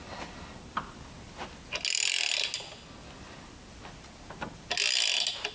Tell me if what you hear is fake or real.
real